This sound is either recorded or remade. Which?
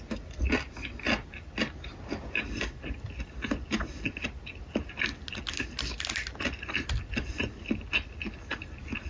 recorded